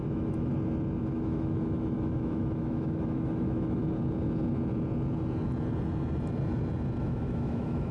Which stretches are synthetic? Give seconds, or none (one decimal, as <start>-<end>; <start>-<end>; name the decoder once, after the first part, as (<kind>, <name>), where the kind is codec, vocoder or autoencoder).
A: 0.0-0.5 (autoencoder, DAC-VAE); 1.0-3.8; 7.0-7.9